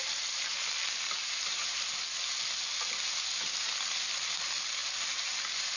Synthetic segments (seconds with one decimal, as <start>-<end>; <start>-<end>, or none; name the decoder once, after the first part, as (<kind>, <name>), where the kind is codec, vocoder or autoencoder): 1.2-2.3 (vocoder, BigVGAN v2)